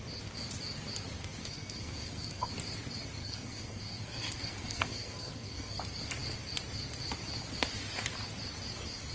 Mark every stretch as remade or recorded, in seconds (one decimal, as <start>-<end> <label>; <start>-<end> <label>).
0.0-1.4 recorded; 1.4-2.5 remade; 2.5-3.2 recorded; 3.2-5.8 remade; 5.8-9.1 recorded